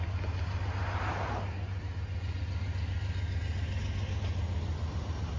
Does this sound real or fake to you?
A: real